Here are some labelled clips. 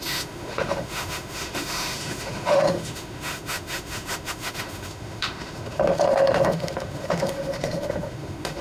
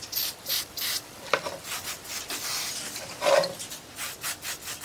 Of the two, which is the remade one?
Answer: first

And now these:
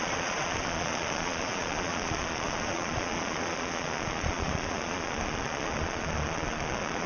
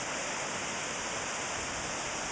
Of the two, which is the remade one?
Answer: first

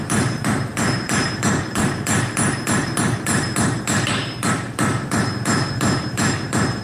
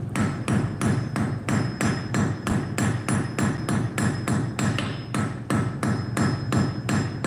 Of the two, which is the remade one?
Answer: first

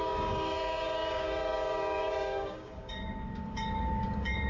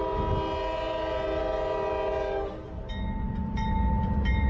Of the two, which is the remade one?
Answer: first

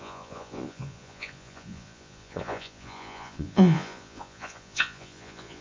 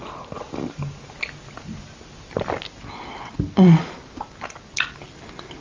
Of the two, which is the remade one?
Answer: first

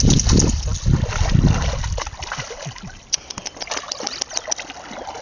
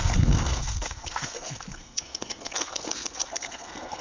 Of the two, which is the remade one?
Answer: second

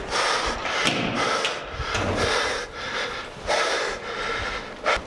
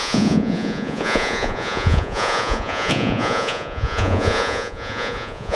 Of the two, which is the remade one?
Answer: second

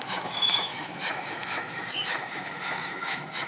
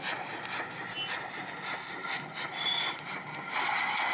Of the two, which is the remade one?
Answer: first